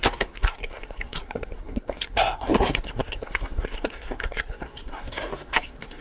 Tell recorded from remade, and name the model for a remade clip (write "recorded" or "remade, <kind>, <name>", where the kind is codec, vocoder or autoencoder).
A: remade, codec, SNAC